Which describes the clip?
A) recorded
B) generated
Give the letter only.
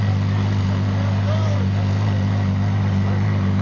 A